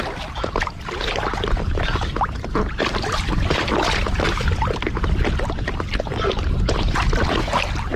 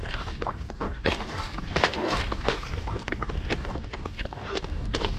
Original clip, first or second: first